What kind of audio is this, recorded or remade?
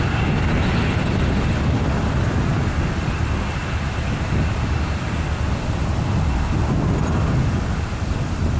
recorded